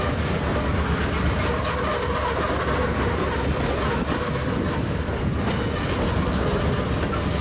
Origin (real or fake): real